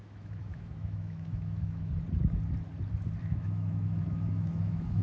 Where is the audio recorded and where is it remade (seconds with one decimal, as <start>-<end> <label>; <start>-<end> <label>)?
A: 0.0-1.9 remade; 1.9-3.2 recorded; 3.2-5.0 remade